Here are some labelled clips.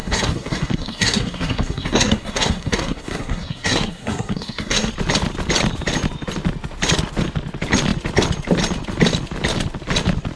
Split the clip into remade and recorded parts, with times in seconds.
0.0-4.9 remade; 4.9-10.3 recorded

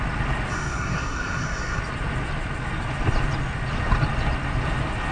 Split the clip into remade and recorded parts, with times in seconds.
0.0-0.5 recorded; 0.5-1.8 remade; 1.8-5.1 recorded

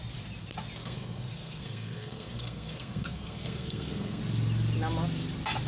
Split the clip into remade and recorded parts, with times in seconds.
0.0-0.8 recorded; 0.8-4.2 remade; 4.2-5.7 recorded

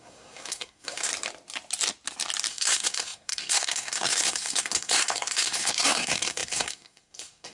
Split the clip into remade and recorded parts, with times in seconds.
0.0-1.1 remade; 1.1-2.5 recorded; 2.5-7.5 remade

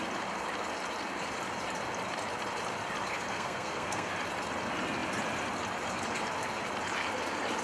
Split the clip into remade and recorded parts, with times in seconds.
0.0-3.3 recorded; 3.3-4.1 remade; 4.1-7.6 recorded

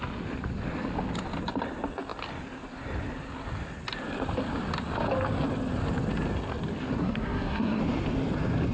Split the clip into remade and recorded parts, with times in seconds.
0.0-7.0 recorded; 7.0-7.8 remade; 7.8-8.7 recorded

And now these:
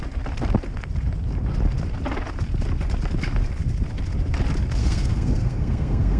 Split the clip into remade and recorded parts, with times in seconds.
0.0-4.8 recorded; 4.8-6.2 remade

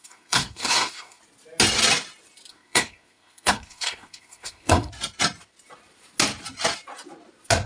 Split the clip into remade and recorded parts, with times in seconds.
0.0-1.2 remade; 1.2-2.5 recorded; 2.5-4.9 remade; 4.9-7.7 recorded